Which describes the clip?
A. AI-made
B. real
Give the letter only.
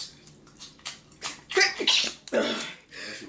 B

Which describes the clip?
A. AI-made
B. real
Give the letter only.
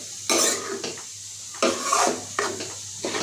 B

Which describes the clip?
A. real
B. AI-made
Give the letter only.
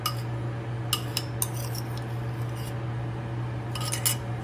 A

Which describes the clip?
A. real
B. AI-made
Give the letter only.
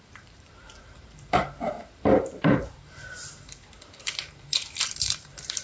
B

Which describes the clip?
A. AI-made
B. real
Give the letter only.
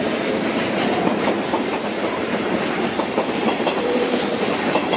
A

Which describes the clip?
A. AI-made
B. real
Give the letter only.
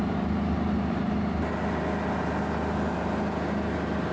B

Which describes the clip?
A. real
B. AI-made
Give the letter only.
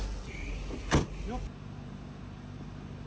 A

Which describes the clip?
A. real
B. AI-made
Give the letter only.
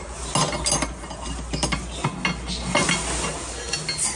A